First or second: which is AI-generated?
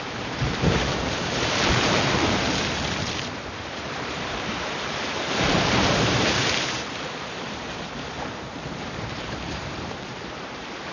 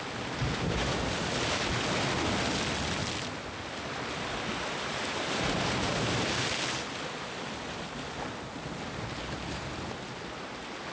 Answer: first